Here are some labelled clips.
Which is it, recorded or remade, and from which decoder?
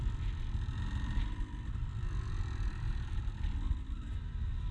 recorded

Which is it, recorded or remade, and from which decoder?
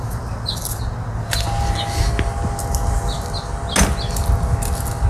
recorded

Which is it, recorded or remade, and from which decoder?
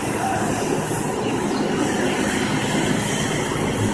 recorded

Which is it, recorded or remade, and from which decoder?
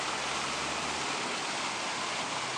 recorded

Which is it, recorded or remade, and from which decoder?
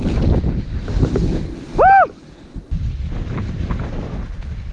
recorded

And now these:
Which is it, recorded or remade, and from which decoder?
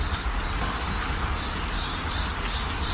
recorded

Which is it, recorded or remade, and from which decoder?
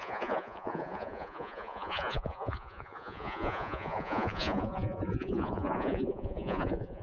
remade, vocoder, Vocos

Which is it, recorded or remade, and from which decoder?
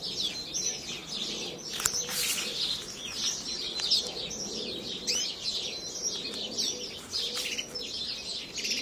recorded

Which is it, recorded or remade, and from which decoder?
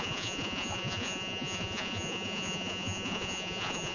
remade, vocoder, Vocos